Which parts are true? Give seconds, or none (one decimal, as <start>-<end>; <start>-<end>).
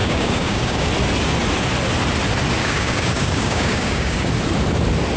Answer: 0.9-2.6; 4.3-5.2